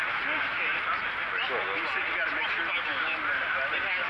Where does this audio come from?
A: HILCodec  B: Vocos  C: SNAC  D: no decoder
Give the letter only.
D